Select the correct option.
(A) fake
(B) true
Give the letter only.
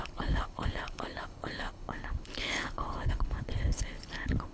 A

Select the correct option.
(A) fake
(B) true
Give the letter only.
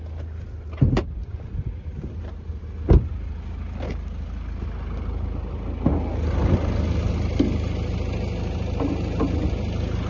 B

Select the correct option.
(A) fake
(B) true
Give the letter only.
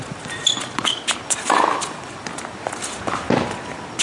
B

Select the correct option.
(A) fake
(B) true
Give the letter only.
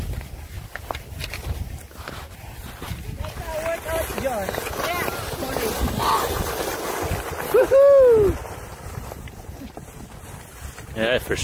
B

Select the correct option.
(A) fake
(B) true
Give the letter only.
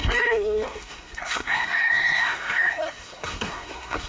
A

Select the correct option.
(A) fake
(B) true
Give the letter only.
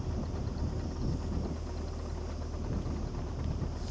B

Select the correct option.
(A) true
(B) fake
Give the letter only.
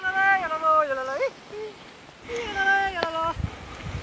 A